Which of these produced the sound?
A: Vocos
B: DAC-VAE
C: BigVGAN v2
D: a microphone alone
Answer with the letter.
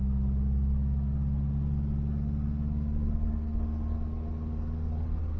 D